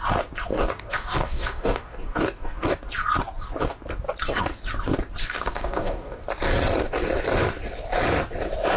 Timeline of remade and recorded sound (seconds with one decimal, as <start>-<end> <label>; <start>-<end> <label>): 0.0-0.5 recorded; 0.5-2.8 remade; 2.8-5.2 recorded; 5.2-6.2 remade; 6.2-8.8 recorded